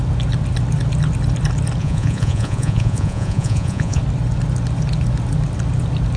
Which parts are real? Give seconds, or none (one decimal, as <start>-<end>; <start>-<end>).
0.0-1.8; 4.0-6.2